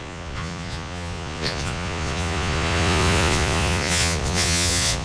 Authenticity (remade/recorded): remade